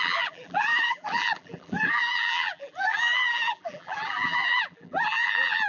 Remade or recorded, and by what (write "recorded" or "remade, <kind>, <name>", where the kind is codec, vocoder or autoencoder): remade, vocoder, BigVGAN v2